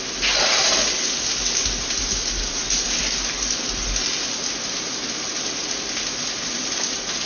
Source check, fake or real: real